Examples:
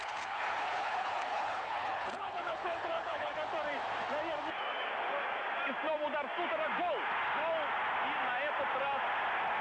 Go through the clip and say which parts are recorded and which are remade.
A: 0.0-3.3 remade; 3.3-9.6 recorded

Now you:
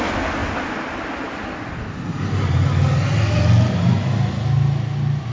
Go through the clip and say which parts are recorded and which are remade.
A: 0.0-5.3 recorded

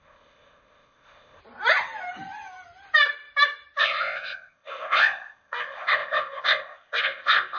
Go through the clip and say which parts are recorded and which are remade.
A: 0.0-1.4 remade; 1.4-3.8 recorded; 3.8-7.6 remade

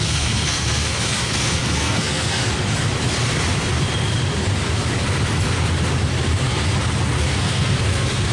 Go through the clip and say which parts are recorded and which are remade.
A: 0.0-2.4 remade; 2.4-7.2 recorded; 7.2-8.3 remade

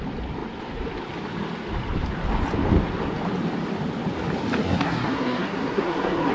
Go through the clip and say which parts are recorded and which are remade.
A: 0.0-4.6 recorded; 4.6-6.3 remade

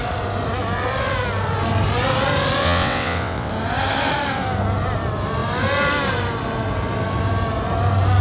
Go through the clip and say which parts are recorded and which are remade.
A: 0.0-2.6 recorded; 2.6-3.5 remade; 3.5-8.2 recorded

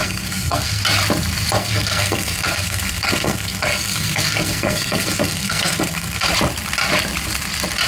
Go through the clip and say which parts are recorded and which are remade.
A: 0.0-0.8 remade; 0.8-1.6 recorded; 1.6-6.3 remade; 6.3-7.9 recorded